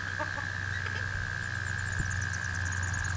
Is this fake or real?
real